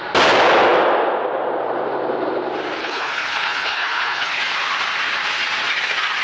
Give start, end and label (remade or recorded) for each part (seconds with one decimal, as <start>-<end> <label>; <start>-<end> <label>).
0.0-2.8 recorded; 2.8-4.4 remade; 4.4-6.2 recorded